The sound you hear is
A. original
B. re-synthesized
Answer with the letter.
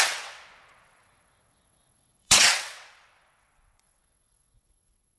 B